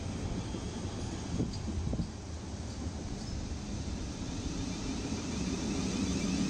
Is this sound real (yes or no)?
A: yes